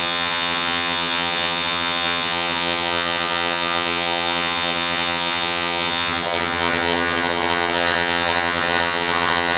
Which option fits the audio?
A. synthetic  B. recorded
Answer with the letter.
A